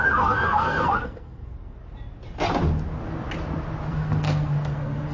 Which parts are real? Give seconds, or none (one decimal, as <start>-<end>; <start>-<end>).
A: 1.8-3.9